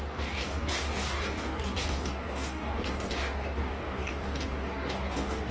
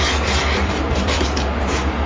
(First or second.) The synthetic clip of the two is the first